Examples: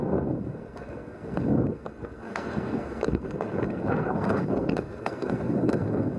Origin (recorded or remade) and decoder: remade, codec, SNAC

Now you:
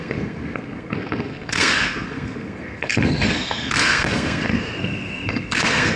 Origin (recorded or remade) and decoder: remade, codec, SNAC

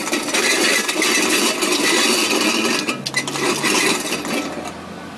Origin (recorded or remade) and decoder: recorded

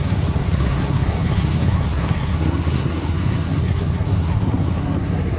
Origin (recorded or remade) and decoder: remade, codec, SNAC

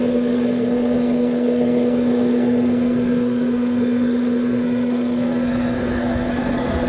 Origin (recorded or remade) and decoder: remade, codec, SNAC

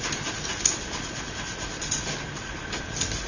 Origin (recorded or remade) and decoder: recorded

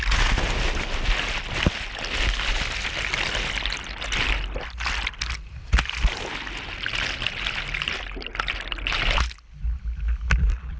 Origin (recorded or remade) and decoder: recorded